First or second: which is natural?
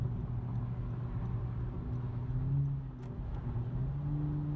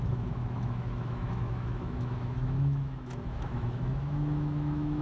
first